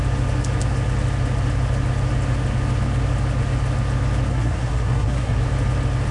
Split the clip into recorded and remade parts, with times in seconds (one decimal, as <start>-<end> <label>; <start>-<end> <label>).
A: 0.0-4.3 recorded; 4.3-5.4 remade; 5.4-6.1 recorded